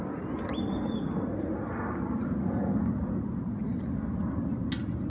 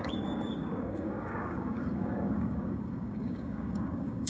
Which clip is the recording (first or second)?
first